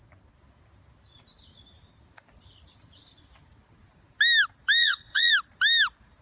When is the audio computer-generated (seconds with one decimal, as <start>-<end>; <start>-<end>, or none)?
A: 4.8-5.3